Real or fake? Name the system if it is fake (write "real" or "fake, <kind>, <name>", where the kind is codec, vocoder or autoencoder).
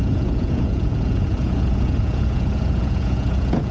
fake, vocoder, Vocos